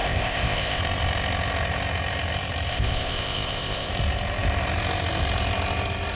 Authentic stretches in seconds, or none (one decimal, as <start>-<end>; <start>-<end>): 0.8-2.7; 3.9-6.2